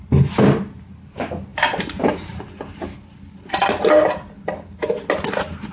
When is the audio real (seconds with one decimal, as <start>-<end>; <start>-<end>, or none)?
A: 0.0-1.5; 2.5-5.7